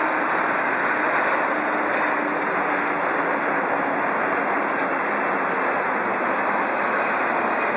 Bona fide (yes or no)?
yes